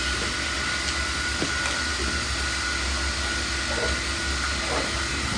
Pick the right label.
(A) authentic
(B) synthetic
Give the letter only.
A